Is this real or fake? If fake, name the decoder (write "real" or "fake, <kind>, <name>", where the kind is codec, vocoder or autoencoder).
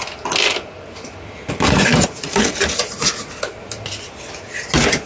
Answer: real